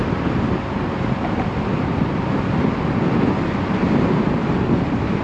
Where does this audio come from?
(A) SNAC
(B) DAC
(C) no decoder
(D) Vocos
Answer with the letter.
C